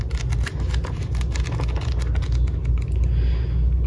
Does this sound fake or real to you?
real